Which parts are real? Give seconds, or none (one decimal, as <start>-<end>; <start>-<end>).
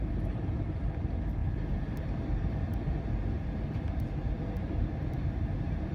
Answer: 0.0-5.9